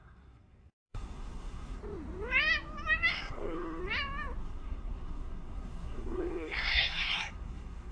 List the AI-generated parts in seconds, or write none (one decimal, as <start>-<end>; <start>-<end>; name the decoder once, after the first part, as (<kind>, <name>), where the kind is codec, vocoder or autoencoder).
0.0-1.8 (codec, SNAC); 3.1-3.8; 4.4-7.9